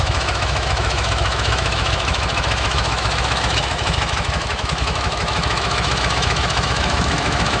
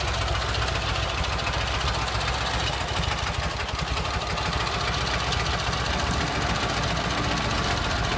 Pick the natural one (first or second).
second